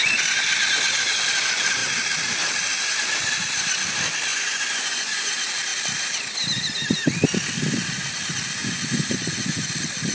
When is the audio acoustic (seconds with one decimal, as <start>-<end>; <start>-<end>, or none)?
0.0-4.3; 5.3-8.6; 9.6-10.1